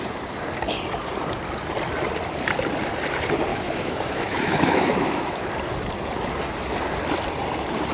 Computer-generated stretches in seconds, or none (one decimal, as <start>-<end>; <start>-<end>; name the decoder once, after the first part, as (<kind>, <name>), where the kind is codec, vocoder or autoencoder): 3.5-5.5 (autoencoder, DAC-VAE)